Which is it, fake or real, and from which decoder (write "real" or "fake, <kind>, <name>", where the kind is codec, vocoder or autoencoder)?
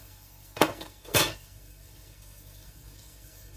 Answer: fake, codec, SNAC